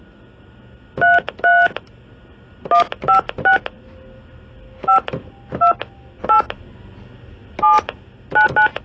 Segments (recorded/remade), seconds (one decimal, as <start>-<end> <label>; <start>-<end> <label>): 0.0-8.8 recorded